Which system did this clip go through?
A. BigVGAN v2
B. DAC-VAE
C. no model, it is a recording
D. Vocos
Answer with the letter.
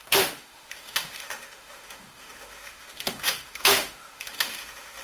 B